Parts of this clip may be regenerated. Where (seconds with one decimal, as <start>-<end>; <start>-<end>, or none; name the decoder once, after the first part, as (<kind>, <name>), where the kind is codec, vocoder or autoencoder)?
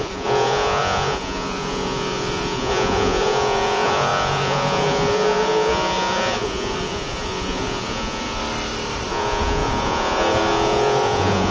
0.0-8.4 (vocoder, Vocos); 9.1-11.5